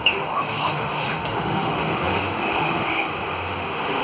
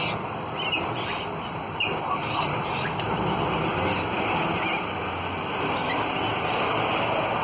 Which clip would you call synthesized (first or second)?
first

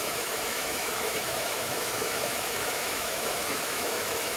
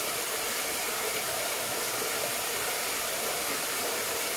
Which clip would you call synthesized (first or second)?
first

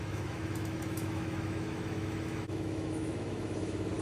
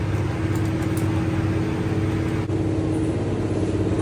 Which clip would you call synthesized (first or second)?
first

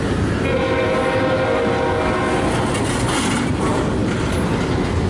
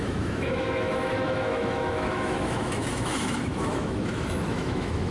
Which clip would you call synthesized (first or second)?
second